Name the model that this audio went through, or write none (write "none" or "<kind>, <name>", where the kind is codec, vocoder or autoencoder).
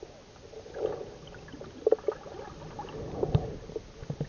none